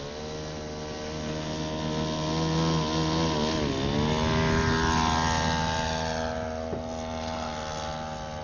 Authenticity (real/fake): real